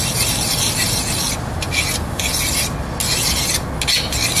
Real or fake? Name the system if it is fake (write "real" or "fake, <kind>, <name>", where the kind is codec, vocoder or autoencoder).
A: real